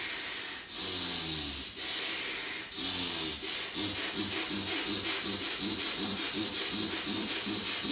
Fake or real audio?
real